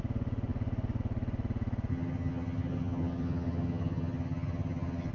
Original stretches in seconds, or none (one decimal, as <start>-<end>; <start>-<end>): 0.0-1.9

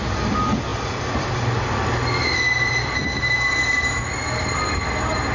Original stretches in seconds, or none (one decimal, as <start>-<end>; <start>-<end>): 0.0-5.3

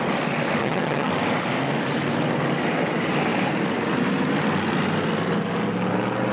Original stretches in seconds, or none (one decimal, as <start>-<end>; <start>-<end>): 0.0-0.6; 1.1-6.3

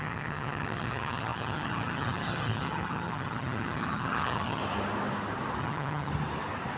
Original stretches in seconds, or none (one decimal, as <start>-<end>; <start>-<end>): 4.6-5.6; 6.1-6.8

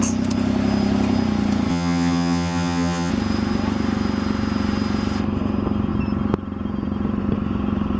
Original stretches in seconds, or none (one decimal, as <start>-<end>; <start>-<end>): 0.0-1.7; 3.1-8.0

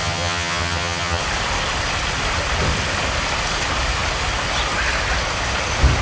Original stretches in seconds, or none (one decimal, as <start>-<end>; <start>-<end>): 1.2-6.0

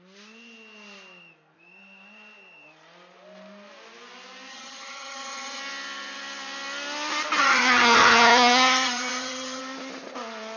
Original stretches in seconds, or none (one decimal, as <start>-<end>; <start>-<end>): 0.0-4.5; 5.6-7.4; 9.6-10.6